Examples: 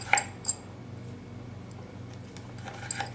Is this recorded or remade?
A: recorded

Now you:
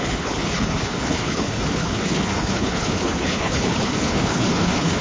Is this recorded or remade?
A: remade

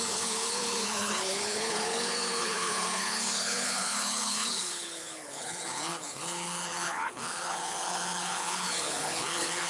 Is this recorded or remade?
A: remade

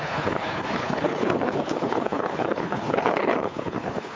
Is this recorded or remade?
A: remade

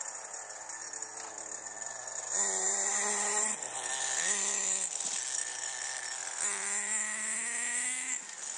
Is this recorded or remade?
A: recorded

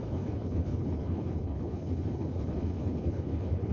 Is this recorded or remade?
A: remade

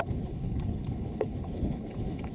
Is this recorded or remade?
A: remade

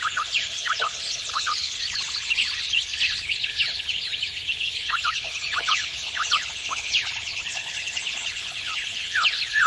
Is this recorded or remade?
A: remade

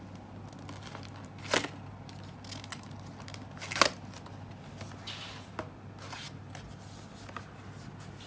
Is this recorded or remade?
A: recorded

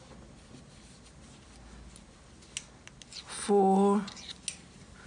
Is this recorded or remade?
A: recorded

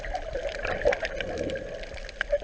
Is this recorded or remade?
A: recorded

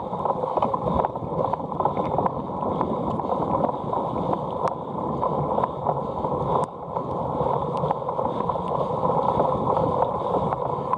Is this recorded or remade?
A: recorded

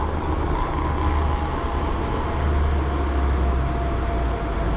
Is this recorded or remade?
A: recorded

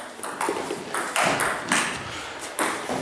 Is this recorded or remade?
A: recorded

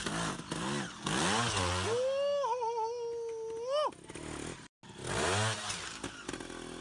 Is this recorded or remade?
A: recorded